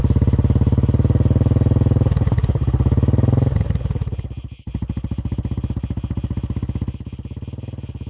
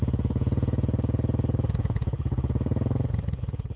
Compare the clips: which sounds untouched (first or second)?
first